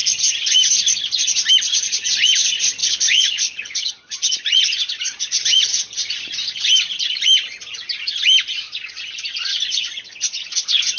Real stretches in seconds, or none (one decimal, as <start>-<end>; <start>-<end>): 0.0-2.8; 3.9-11.0